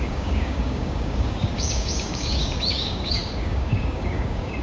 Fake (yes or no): yes